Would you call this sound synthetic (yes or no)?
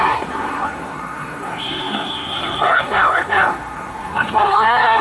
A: yes